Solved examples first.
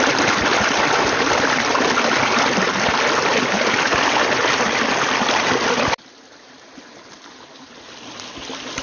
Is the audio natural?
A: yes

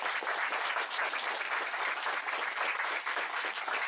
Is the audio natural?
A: yes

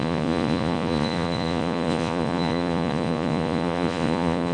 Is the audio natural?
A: no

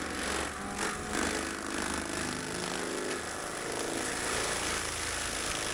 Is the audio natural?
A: yes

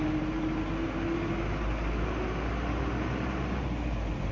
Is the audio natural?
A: yes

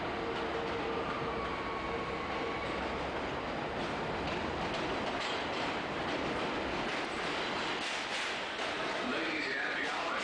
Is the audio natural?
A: yes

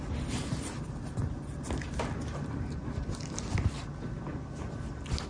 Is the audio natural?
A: yes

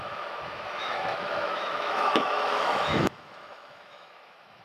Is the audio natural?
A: no